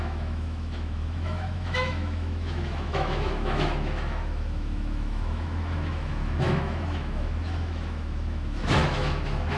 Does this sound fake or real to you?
fake